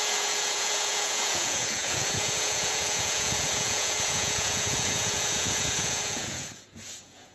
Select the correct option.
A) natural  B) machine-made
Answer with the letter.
B